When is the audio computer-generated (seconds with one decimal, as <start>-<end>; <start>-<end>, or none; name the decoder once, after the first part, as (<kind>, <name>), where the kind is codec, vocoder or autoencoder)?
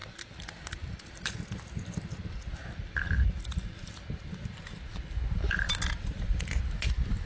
none